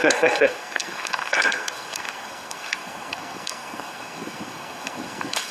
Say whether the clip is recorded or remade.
remade